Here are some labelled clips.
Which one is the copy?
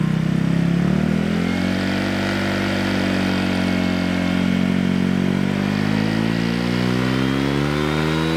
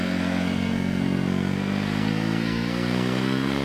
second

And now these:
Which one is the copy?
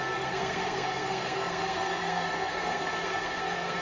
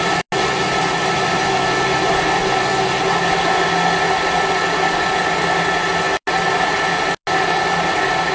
first